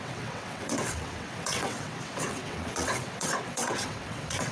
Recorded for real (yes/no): no